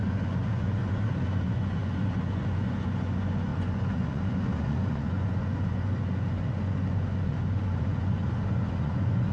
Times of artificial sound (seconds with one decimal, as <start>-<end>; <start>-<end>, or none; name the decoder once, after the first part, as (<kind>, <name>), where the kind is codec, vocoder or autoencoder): 0.0-9.3 (vocoder, Vocos)